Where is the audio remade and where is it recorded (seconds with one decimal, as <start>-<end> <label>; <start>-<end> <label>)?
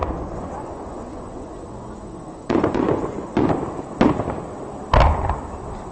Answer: 0.0-3.5 remade; 3.5-5.9 recorded